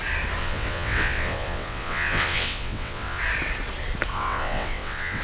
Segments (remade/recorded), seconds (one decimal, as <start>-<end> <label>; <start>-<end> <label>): 0.0-0.4 recorded; 0.4-3.2 remade; 3.2-4.1 recorded; 4.1-5.2 remade

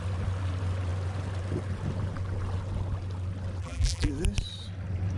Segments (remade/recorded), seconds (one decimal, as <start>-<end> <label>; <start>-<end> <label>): 0.0-3.6 recorded; 3.6-4.1 remade; 4.1-5.2 recorded

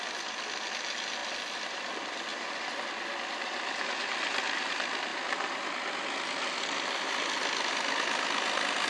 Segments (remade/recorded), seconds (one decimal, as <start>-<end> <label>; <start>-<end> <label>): 0.0-8.9 recorded